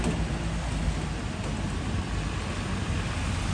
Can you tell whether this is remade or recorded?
recorded